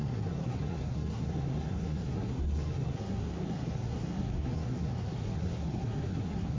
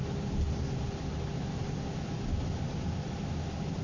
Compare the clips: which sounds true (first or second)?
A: second